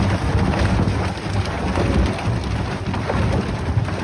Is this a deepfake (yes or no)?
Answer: no